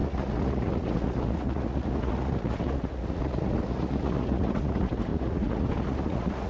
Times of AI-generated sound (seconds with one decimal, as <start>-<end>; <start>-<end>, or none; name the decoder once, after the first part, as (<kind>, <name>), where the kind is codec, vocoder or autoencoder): 0.0-6.5 (vocoder, Vocos)